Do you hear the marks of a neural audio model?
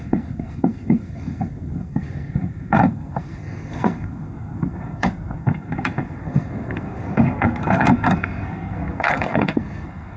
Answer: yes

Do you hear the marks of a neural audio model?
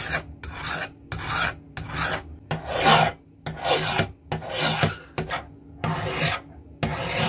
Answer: no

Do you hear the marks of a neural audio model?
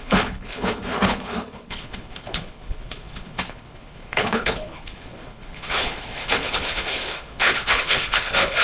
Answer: yes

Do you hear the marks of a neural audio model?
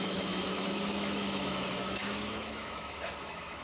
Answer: yes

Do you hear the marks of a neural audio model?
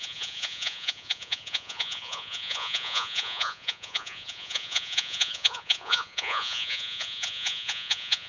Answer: yes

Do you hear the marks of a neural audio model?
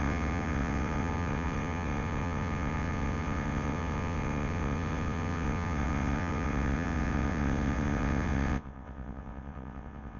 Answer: yes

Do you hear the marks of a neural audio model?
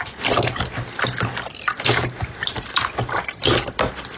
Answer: no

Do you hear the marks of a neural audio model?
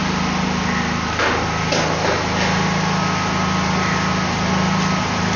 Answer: no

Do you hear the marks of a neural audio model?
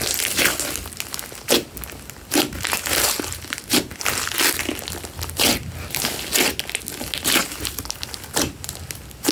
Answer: no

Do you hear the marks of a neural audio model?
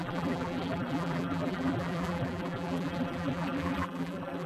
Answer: yes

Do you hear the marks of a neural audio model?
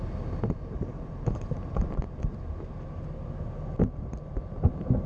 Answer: no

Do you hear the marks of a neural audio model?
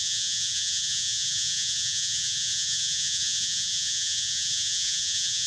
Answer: yes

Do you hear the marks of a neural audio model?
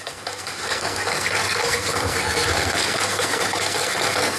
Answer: yes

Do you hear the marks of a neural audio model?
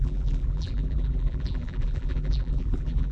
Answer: yes